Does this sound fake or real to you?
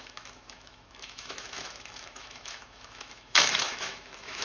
fake